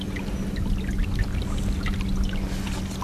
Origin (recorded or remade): recorded